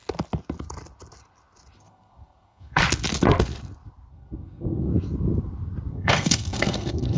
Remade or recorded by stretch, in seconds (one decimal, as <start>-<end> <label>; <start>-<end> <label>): 0.0-1.8 recorded; 1.8-2.8 remade; 2.8-4.1 recorded; 4.1-4.9 remade; 4.9-5.9 recorded; 5.9-7.2 remade